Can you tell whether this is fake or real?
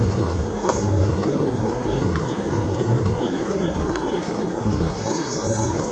fake